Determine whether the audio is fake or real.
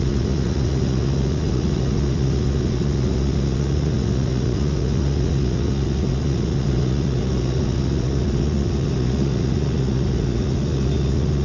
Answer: fake